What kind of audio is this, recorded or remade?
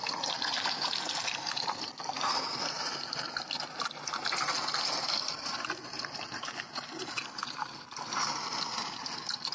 recorded